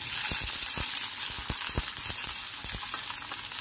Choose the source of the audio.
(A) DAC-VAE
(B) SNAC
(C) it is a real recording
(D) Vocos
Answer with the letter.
C